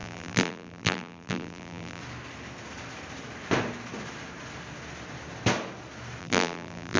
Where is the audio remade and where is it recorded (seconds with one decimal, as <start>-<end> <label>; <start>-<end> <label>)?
0.0-2.0 remade; 2.0-6.2 recorded; 6.2-7.0 remade